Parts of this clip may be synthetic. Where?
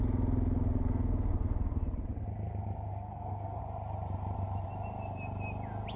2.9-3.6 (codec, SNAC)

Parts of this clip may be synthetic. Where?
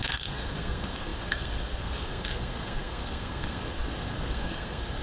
0.0-5.0 (codec, SNAC)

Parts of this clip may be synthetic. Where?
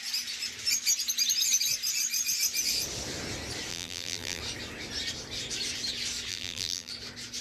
3.7-4.4 (vocoder, BigVGAN v2); 6.3-6.9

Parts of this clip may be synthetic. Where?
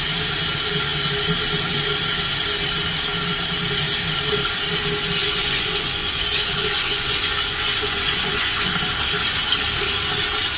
5.2-8.7 (vocoder, Vocos)